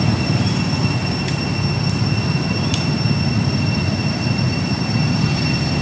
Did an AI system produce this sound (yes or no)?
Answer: no